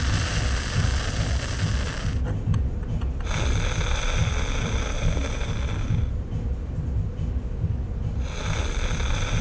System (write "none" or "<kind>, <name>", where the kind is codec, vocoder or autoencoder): none